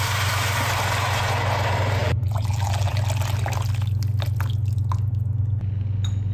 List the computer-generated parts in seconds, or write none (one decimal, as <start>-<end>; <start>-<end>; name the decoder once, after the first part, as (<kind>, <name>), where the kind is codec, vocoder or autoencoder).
2.0-3.0 (vocoder, BigVGAN v2)